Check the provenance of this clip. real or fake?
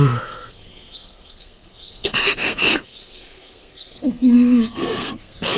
fake